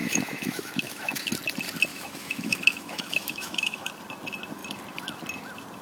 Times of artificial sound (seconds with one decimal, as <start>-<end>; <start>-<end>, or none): 0.0-1.3; 1.9-3.9